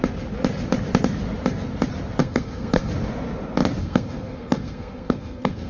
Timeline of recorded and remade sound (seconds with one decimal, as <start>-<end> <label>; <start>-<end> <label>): 0.0-2.2 recorded; 2.2-2.9 remade; 2.9-3.8 recorded; 3.8-5.7 remade